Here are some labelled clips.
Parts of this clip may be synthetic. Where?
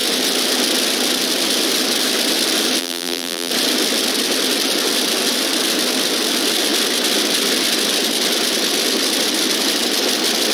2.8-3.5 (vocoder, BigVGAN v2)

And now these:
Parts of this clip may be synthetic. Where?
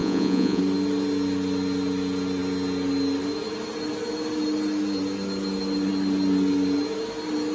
0.0-0.6 (vocoder, Vocos)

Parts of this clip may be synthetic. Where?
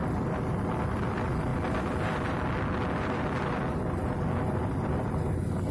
none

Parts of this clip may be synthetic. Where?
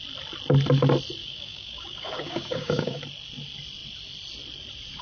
1.2-3.0 (codec, DAC)